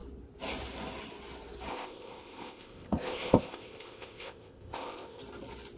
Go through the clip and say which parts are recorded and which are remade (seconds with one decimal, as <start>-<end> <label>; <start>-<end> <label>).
0.0-1.7 recorded; 1.7-5.2 remade; 5.2-5.8 recorded

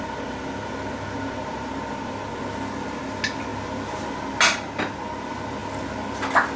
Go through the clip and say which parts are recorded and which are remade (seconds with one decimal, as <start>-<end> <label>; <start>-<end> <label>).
0.0-6.6 recorded

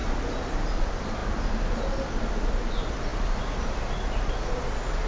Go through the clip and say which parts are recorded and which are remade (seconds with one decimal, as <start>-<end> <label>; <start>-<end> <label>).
0.0-5.1 recorded

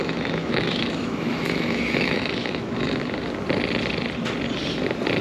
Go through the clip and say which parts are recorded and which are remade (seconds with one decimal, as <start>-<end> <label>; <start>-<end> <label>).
0.0-3.0 remade; 3.0-5.2 recorded

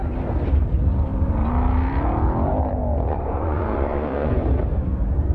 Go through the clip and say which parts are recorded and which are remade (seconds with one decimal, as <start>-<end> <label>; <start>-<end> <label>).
0.0-3.1 recorded; 3.1-4.3 remade; 4.3-5.3 recorded

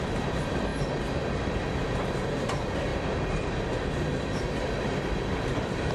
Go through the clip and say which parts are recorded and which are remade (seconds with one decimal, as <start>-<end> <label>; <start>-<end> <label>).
0.0-0.7 remade; 0.7-2.5 recorded; 2.5-2.9 remade; 2.9-5.3 recorded; 5.3-5.9 remade